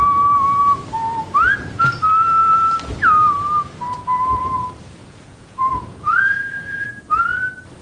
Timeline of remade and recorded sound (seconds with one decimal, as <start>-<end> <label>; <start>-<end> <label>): 0.0-5.0 recorded; 5.0-6.8 remade; 6.8-7.8 recorded